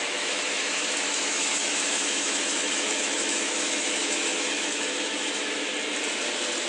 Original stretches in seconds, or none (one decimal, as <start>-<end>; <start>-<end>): 5.7-6.7